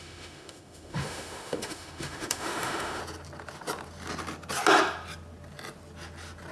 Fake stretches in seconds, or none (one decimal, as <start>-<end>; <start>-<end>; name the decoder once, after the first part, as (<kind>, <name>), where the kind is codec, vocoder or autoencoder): 0.0-3.0 (autoencoder, DAC-VAE)